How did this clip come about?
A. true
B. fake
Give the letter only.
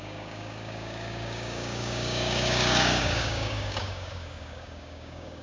B